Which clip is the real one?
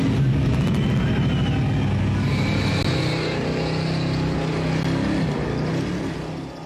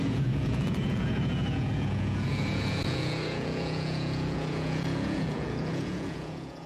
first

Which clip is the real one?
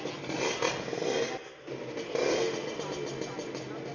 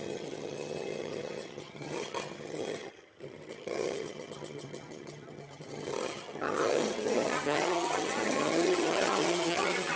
first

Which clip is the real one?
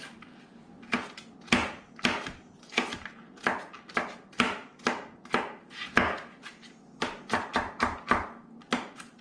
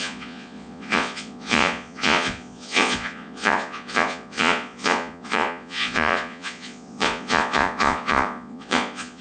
first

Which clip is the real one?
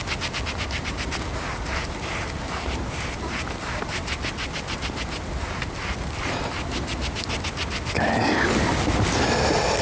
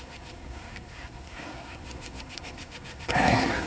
first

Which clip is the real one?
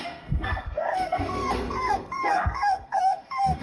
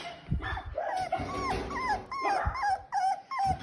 second